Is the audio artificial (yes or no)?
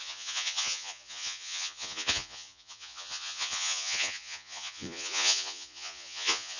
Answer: yes